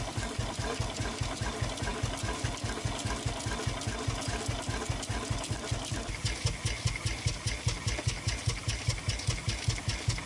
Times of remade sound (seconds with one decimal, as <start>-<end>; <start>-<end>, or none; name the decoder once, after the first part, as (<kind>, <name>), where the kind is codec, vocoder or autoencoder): none